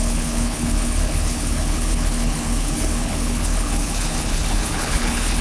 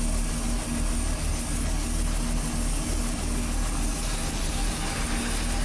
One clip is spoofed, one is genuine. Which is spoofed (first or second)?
first